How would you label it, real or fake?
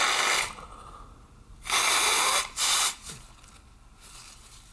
real